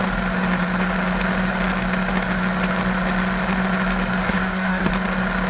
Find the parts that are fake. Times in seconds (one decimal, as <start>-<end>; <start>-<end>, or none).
4.2-4.9